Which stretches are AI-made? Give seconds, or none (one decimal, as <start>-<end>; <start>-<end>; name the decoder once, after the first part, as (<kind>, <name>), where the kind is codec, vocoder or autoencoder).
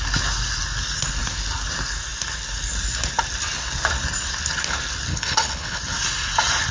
5.1-5.8 (codec, HILCodec)